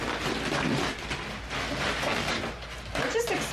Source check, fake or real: real